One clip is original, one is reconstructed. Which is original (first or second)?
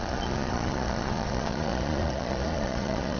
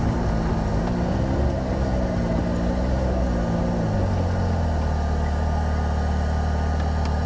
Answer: second